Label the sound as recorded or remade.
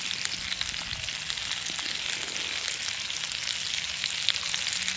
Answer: recorded